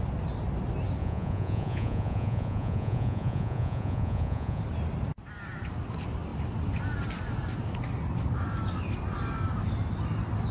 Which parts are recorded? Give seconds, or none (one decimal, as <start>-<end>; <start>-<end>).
0.0-1.0; 4.6-10.5